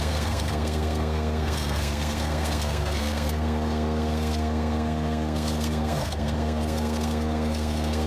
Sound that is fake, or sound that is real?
fake